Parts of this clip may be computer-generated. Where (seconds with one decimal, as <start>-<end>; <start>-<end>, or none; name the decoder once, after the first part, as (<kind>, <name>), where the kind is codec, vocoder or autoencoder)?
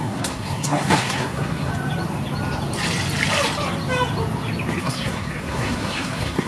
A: 0.0-1.7 (codec, SNAC); 4.8-6.5